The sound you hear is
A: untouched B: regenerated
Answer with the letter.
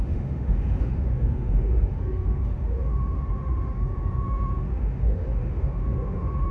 B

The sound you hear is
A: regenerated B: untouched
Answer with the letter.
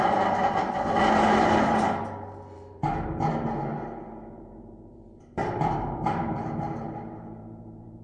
A